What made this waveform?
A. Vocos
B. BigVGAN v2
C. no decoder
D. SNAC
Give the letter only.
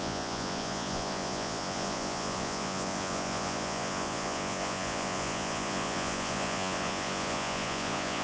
A